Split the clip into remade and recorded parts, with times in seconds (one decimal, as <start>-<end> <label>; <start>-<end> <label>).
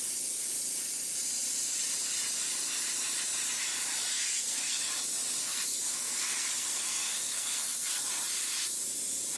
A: 0.0-4.1 recorded; 4.1-4.9 remade; 4.9-5.4 recorded; 5.4-8.0 remade; 8.0-9.4 recorded